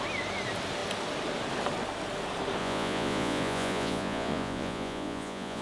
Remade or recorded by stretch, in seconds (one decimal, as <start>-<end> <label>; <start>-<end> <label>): 0.0-2.6 recorded; 2.6-5.6 remade

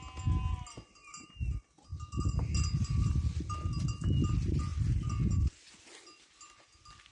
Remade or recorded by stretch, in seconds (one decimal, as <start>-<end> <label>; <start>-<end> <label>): 0.0-7.1 recorded

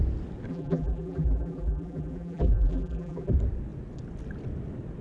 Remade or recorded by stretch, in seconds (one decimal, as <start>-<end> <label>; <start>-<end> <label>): 0.0-0.5 recorded; 0.5-3.3 remade; 3.3-5.0 recorded

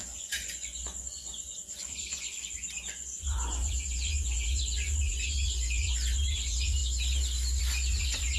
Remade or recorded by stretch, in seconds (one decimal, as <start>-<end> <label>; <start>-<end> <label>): 0.0-6.8 remade; 6.8-7.6 recorded; 7.6-8.4 remade

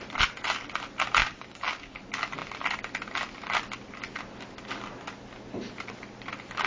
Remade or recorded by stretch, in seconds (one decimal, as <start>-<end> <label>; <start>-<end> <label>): 0.0-1.2 recorded; 1.2-2.0 remade; 2.0-6.7 recorded

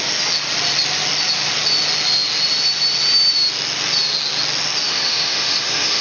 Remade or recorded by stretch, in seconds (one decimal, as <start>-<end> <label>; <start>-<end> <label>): 0.0-4.9 recorded; 4.9-6.0 remade

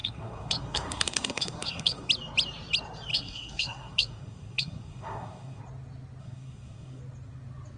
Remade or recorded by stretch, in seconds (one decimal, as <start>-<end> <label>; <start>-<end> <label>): 0.0-2.1 remade; 2.1-3.1 recorded; 3.1-5.6 remade; 5.6-6.2 recorded; 6.2-7.0 remade; 7.0-7.8 recorded